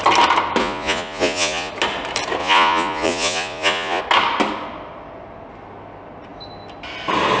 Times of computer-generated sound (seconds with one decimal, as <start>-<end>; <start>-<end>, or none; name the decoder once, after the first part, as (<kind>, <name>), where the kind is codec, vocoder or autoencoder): 0.6-1.7 (vocoder, Vocos); 2.4-4.0